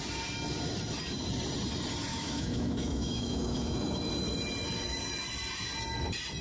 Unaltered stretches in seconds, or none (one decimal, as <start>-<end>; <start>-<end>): 0.0-2.1; 4.1-6.4

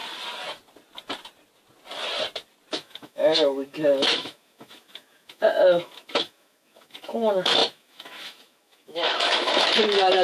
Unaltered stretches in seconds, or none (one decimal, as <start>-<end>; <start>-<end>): 0.0-2.7

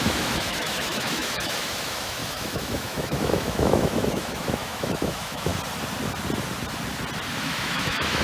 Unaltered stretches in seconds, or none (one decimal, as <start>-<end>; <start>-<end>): 5.5-7.4

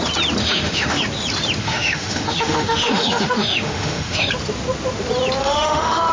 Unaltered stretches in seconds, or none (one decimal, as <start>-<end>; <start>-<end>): 0.0-0.4; 1.0-1.6; 4.3-5.4